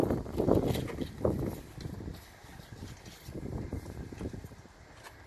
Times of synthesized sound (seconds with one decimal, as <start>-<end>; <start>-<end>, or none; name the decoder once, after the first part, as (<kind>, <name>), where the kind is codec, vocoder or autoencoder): none